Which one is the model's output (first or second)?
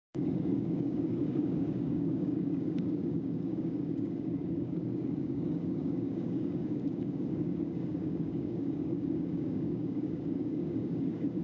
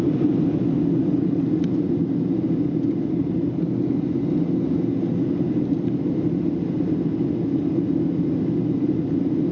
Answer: first